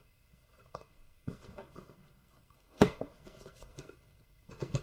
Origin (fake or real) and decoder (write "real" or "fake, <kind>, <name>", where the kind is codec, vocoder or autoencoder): fake, codec, SNAC